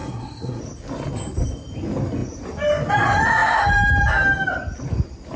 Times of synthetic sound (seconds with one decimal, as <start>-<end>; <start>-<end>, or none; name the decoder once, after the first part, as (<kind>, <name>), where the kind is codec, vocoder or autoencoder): 0.0-0.6 (codec, SNAC)